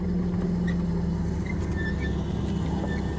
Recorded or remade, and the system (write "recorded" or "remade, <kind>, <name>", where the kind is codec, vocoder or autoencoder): recorded